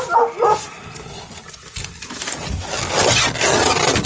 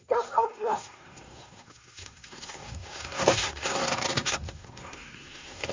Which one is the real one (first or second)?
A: first